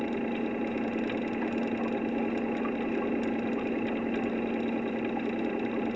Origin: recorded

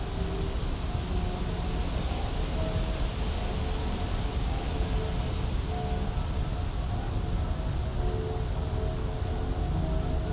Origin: recorded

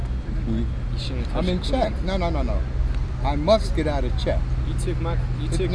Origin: recorded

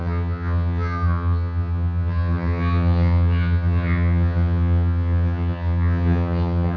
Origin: remade